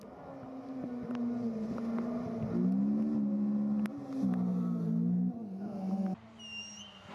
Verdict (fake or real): real